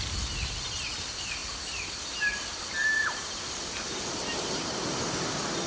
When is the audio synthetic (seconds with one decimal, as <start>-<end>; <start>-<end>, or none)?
none